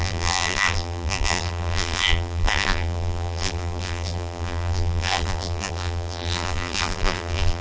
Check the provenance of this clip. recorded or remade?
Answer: remade